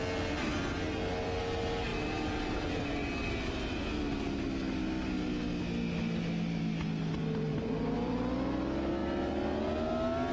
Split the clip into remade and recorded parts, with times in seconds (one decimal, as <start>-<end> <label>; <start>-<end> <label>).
0.0-7.5 recorded; 7.5-8.1 remade; 8.1-10.3 recorded

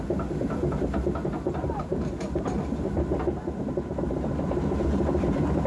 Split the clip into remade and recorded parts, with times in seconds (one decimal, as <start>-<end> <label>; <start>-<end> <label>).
0.0-1.6 recorded; 1.6-2.3 remade; 2.3-5.7 recorded

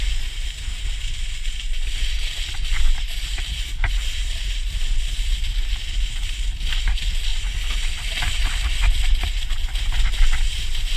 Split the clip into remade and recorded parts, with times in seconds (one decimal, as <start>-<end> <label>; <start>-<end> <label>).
0.0-11.0 recorded

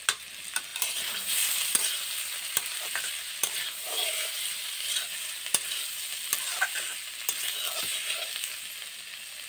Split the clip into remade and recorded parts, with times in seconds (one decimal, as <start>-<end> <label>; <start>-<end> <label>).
0.0-0.7 recorded; 0.7-5.9 remade; 5.9-9.5 recorded

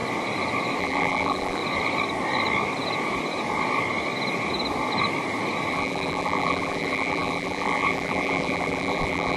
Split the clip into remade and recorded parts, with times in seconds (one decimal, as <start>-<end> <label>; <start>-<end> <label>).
0.0-0.8 recorded; 0.8-1.6 remade; 1.6-5.7 recorded; 5.7-9.4 remade

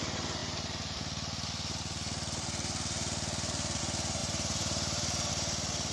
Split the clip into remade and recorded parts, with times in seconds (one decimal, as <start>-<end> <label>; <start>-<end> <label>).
0.0-4.2 recorded; 4.2-5.3 remade; 5.3-5.9 recorded

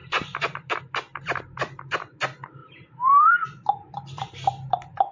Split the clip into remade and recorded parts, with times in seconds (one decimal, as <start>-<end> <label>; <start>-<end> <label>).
0.0-0.8 remade; 0.8-2.6 recorded; 2.6-5.1 remade